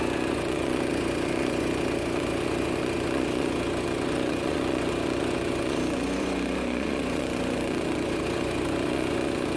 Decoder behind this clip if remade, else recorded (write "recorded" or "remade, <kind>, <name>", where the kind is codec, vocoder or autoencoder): remade, vocoder, Vocos